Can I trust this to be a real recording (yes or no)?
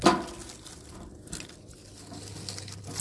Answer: yes